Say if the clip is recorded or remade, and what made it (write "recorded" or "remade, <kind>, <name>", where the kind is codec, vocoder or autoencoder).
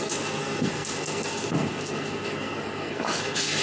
remade, codec, SNAC